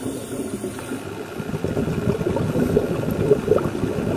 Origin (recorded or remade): recorded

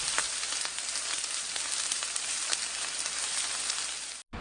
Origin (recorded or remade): recorded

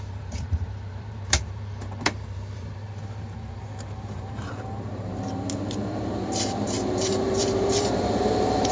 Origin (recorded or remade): remade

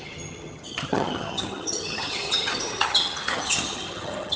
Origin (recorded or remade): remade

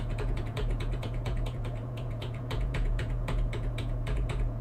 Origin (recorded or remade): remade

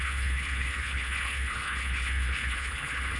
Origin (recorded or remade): remade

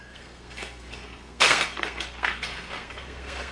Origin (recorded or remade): remade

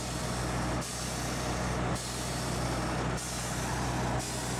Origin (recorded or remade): recorded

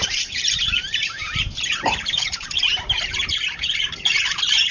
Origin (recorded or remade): remade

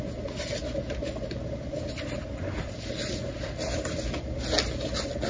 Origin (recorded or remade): recorded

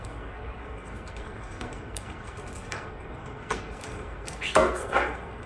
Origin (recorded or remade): remade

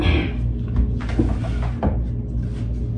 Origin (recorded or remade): recorded